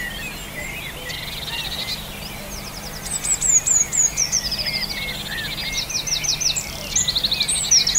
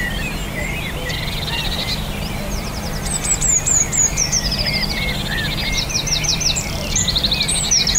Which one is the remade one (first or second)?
second